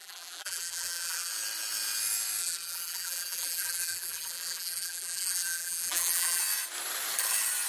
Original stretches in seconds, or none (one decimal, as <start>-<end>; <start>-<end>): 1.3-2.4; 6.4-7.7